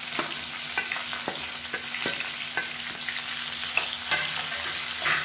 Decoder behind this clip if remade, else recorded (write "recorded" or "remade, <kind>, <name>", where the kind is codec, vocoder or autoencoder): recorded